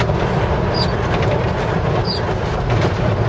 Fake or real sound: real